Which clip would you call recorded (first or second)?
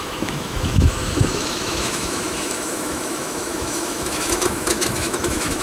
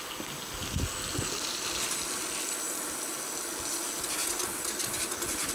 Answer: second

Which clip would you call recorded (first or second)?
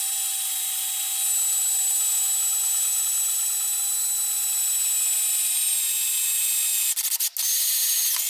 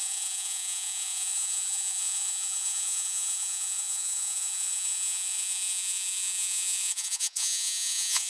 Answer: first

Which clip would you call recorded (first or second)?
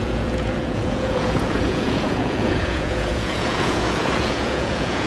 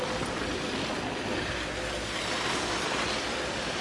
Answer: second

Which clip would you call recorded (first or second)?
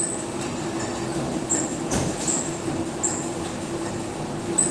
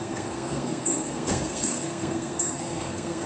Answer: first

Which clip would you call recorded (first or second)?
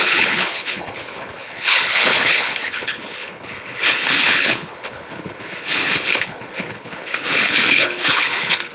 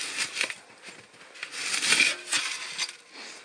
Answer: second